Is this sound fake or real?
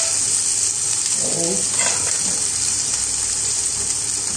real